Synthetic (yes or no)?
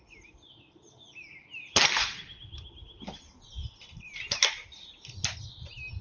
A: no